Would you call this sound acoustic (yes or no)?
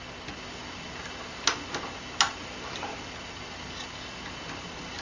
yes